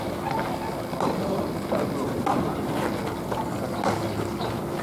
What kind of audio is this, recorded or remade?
recorded